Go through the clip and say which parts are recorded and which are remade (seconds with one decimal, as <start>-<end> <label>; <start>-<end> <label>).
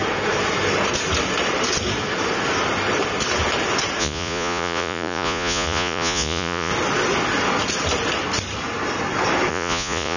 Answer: 0.0-4.0 recorded; 4.0-6.7 remade; 6.7-9.5 recorded; 9.5-10.2 remade